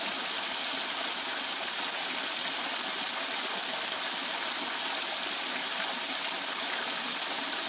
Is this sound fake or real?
real